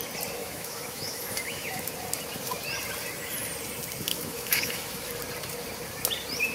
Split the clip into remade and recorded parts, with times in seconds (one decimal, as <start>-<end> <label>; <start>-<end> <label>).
0.0-0.4 recorded; 0.4-1.9 remade; 1.9-4.1 recorded; 4.1-5.1 remade; 5.1-6.5 recorded